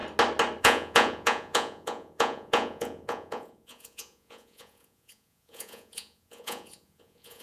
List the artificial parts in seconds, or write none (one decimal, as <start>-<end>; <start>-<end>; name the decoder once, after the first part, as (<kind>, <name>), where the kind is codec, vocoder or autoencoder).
0.6-7.4 (vocoder, Vocos)